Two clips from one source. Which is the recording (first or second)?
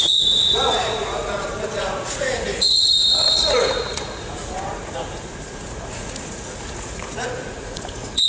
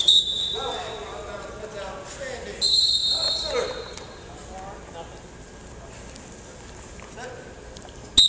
second